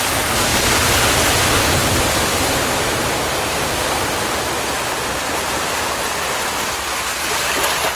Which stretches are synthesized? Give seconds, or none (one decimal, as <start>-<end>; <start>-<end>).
1.8-5.8